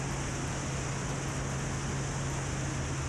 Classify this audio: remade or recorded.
recorded